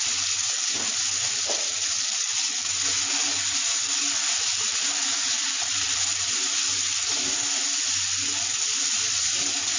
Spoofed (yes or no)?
no